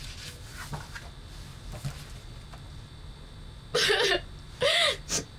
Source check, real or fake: real